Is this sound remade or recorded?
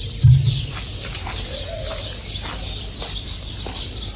recorded